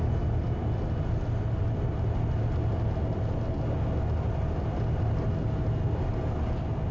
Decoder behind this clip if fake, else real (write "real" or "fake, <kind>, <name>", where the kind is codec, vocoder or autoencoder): real